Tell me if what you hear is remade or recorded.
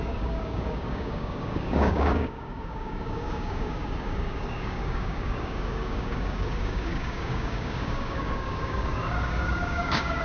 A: remade